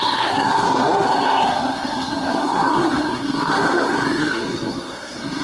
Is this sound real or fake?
fake